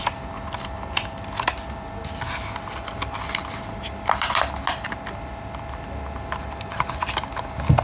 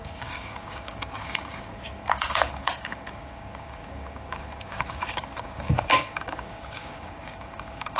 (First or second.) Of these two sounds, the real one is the first